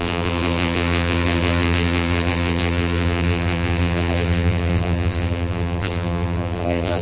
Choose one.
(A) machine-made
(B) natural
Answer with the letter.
A